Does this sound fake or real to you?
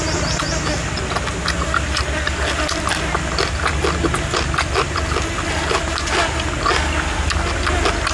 real